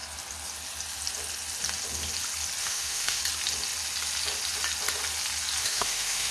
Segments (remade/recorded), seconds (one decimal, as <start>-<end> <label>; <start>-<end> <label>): 0.0-2.6 recorded; 2.6-3.2 remade; 3.2-5.6 recorded; 5.6-6.3 remade